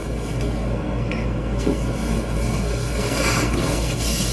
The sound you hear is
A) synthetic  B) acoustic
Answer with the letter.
A